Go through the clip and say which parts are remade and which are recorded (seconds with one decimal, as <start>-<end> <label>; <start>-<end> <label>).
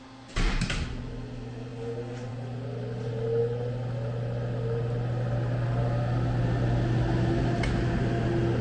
0.0-8.6 recorded